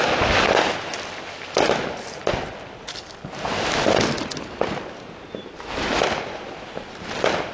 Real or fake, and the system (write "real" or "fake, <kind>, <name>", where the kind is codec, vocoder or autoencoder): real